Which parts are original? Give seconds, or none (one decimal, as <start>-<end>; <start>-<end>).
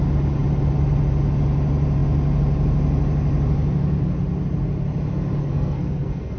0.0-5.4